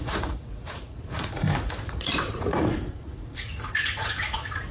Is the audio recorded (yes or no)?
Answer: no